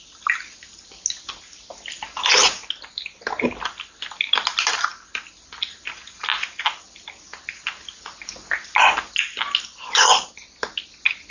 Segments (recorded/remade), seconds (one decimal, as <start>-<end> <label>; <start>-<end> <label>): 0.0-11.3 recorded